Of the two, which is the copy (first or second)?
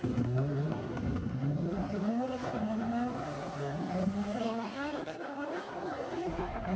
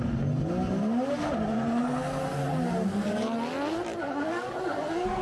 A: first